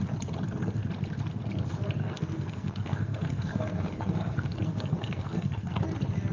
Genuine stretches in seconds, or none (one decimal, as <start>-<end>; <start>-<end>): 0.0-2.0; 5.8-6.3